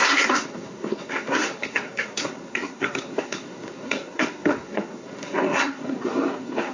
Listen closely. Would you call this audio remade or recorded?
remade